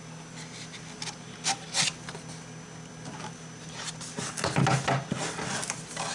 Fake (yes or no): no